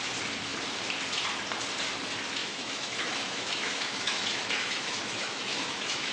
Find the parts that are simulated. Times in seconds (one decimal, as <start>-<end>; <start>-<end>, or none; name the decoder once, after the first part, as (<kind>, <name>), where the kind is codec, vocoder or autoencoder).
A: 2.4-6.1 (autoencoder, DAC-VAE)